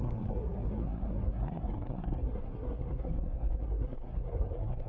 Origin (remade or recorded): remade